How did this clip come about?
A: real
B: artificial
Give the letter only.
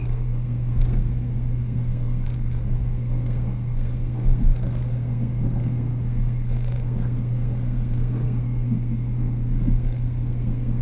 B